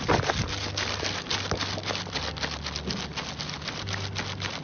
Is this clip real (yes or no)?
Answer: yes